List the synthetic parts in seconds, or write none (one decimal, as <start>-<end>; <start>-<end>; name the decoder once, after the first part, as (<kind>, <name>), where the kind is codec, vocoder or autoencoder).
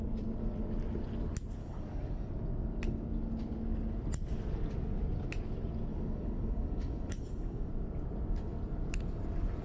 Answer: 1.6-2.3 (codec, DAC); 5.9-7.7